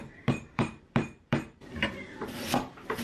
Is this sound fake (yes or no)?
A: yes